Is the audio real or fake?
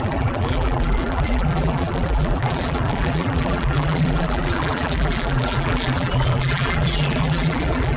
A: fake